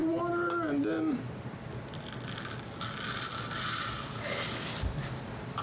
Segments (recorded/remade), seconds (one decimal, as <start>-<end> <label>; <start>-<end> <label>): 0.0-5.6 recorded